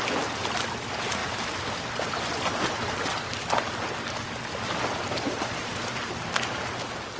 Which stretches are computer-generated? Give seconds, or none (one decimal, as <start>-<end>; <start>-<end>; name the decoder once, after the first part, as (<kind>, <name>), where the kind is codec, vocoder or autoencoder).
none